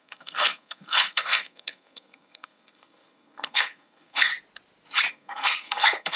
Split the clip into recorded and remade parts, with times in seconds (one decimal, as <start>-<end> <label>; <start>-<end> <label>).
0.0-4.3 remade; 4.3-5.1 recorded; 5.1-6.2 remade